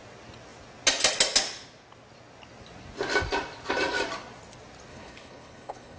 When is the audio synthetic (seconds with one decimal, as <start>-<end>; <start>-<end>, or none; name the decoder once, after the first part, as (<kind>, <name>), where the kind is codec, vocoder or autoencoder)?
4.9-6.0 (codec, HILCodec)